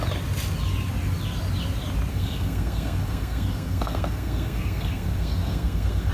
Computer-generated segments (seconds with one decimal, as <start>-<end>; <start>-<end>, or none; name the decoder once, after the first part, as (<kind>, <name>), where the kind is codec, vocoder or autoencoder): 2.1-6.1 (codec, SNAC)